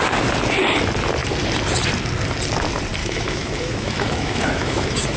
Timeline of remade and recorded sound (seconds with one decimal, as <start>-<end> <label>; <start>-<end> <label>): 0.0-3.0 recorded; 3.0-5.2 remade